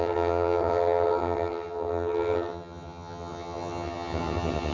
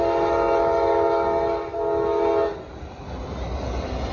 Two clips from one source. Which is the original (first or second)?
second